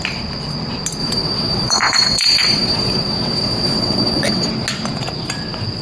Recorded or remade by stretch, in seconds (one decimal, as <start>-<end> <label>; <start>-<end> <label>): 0.0-1.0 recorded; 1.0-4.5 remade; 4.5-5.8 recorded